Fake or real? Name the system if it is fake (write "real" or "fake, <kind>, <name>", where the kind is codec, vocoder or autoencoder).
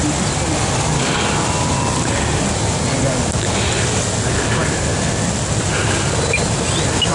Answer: real